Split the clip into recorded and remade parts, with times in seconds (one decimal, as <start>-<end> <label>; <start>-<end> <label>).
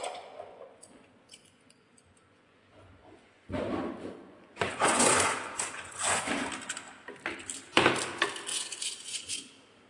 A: 0.0-3.6 remade; 3.6-4.2 recorded; 4.2-6.5 remade; 6.5-8.5 recorded; 8.5-9.5 remade; 9.5-9.9 recorded